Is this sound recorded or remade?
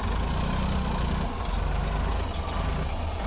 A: recorded